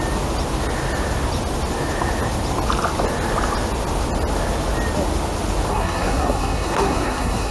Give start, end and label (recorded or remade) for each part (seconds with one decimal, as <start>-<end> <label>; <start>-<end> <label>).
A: 0.0-5.7 recorded; 5.7-7.5 remade